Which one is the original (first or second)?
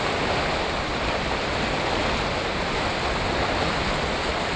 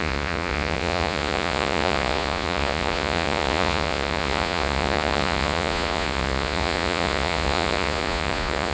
first